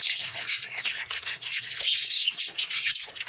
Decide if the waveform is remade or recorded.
remade